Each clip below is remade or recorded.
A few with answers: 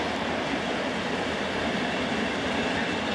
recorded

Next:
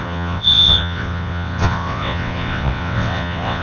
remade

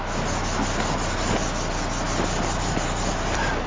recorded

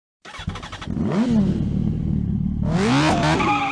recorded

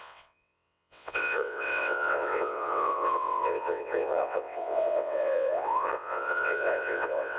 remade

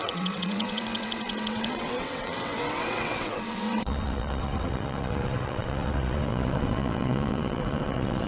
remade